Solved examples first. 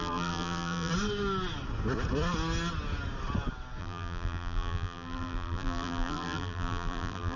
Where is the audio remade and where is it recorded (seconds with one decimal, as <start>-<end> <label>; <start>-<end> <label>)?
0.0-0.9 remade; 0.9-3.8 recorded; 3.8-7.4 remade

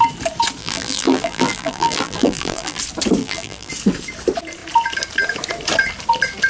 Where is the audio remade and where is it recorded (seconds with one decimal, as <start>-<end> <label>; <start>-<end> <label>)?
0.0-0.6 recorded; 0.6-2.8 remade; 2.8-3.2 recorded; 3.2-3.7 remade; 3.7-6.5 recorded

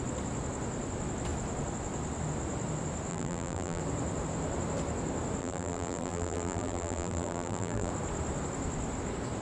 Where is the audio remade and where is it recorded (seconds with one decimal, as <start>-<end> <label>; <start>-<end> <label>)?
0.0-3.1 recorded; 3.1-3.8 remade; 3.8-5.4 recorded; 5.4-7.9 remade; 7.9-9.4 recorded

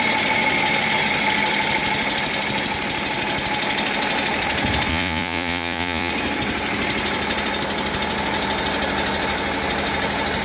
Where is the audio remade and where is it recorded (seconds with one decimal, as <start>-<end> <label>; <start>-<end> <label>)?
0.0-4.9 recorded; 4.9-6.1 remade; 6.1-10.4 recorded

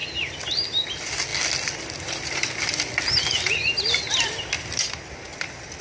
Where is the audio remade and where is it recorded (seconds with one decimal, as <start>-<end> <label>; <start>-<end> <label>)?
0.0-5.8 recorded